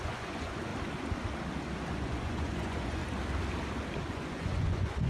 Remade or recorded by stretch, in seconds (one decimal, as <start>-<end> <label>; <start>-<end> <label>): 0.0-0.7 remade; 0.7-1.9 recorded; 1.9-3.0 remade; 3.0-4.1 recorded; 4.1-5.1 remade